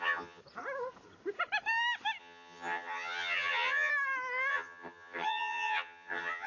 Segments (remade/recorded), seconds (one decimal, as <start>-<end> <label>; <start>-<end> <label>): 0.0-0.4 remade; 0.4-2.2 recorded; 2.2-3.9 remade; 3.9-4.5 recorded; 4.5-6.5 remade